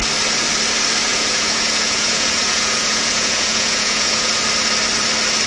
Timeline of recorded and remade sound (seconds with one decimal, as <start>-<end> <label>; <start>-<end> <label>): 0.0-1.1 recorded; 1.1-4.4 remade; 4.4-5.5 recorded